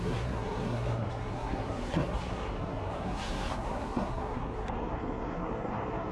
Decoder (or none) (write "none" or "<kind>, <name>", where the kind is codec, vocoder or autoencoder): codec, SNAC